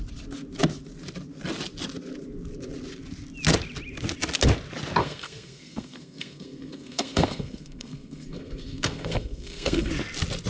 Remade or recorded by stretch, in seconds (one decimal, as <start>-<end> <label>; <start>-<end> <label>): 0.0-5.0 recorded; 5.0-9.9 remade; 9.9-10.5 recorded

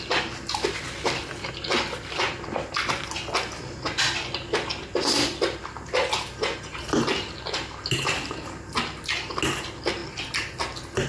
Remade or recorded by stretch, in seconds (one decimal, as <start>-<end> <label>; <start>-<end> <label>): 0.0-11.1 recorded

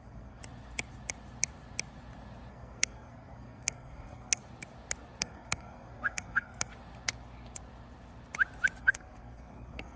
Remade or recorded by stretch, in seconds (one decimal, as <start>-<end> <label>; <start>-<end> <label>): 0.0-0.4 remade; 0.4-2.5 recorded; 2.5-4.4 remade; 4.4-5.2 recorded; 5.2-6.7 remade; 6.7-8.8 recorded; 8.8-10.0 remade

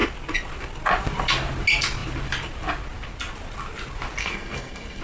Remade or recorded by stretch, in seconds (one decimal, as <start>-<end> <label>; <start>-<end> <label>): 0.0-4.2 recorded; 4.2-5.0 remade

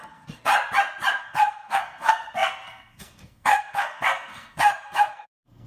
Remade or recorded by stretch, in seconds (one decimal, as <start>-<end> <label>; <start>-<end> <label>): 0.0-0.5 remade; 0.5-1.2 recorded; 1.2-5.7 remade